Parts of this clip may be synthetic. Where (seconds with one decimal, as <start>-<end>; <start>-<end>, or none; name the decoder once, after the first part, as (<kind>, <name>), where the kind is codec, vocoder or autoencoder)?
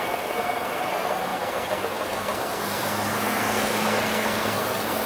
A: 0.0-5.1 (codec, SNAC)